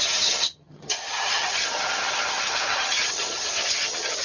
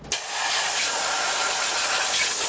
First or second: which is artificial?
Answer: first